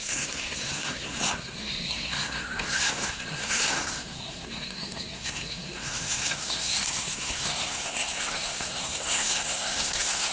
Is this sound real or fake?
fake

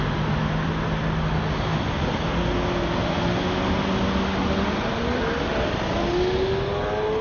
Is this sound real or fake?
real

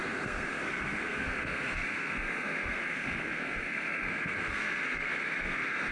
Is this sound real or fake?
fake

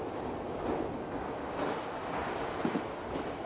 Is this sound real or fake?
real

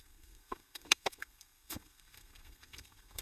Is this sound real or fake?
fake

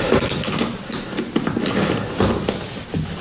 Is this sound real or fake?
real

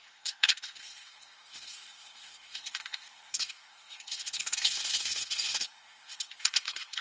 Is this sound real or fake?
fake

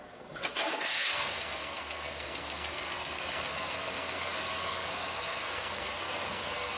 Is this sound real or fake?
fake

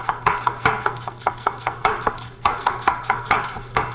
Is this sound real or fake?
fake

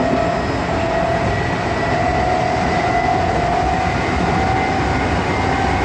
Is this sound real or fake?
real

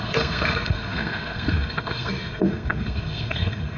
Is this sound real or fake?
fake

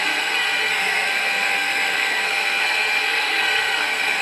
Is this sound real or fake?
fake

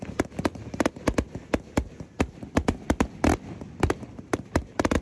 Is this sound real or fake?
real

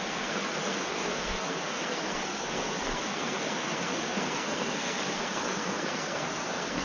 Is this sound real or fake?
fake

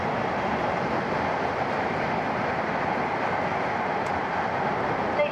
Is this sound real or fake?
real